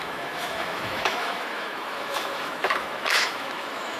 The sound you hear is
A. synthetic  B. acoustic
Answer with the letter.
A